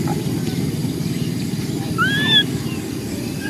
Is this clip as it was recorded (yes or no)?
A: yes